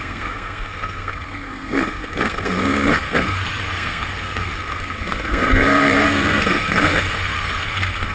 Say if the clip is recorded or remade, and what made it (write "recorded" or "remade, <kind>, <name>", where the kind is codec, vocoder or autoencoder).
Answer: remade, codec, SNAC